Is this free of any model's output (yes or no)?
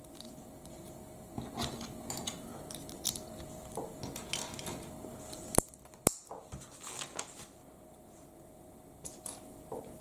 yes